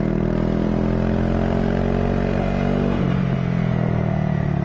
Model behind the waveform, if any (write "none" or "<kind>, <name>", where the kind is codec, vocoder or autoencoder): none